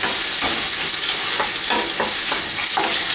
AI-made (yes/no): no